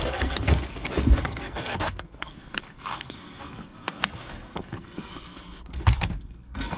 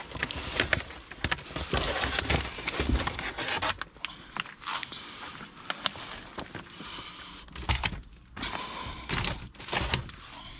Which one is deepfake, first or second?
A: first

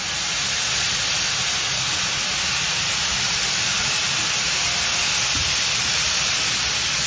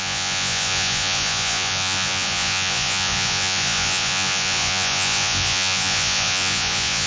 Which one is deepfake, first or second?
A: second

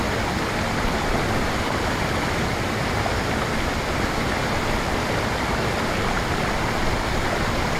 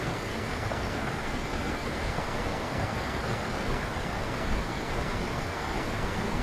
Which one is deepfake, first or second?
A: second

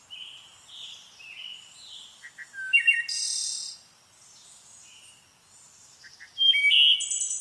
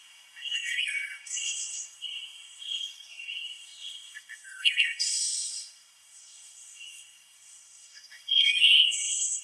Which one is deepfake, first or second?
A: second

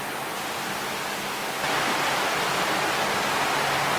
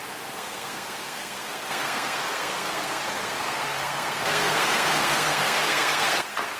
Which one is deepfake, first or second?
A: second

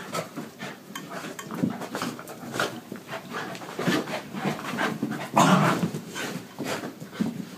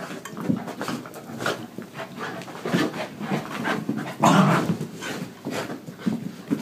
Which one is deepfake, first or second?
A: first